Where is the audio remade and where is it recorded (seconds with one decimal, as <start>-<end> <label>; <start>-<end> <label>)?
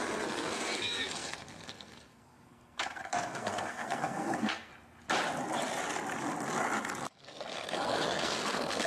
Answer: 0.0-4.7 remade; 4.7-7.1 recorded; 7.1-8.9 remade